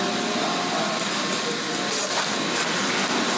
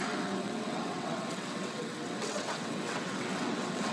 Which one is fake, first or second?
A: second